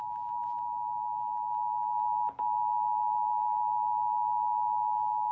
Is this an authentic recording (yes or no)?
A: yes